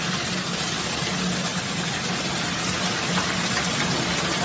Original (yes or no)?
yes